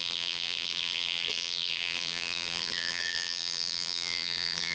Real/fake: fake